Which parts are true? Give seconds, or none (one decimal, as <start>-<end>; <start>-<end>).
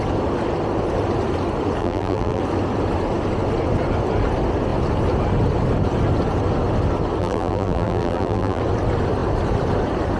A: 0.0-1.8; 2.4-7.2; 8.6-10.2